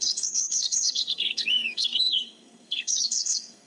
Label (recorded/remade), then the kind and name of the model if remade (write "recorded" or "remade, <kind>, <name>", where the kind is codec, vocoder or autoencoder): remade, codec, SNAC